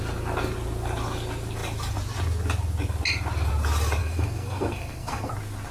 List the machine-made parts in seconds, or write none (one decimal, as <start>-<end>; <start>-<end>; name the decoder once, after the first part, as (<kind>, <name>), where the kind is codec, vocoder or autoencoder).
4.0-5.3 (codec, SNAC)